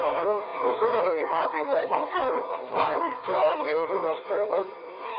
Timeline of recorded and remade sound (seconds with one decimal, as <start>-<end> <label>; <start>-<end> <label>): 0.0-5.2 remade